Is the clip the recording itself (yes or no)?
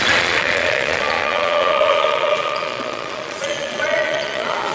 no